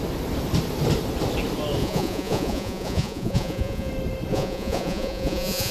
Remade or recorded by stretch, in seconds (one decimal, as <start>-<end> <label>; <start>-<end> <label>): 0.0-1.8 recorded; 1.8-3.9 remade; 3.9-4.3 recorded; 4.3-5.7 remade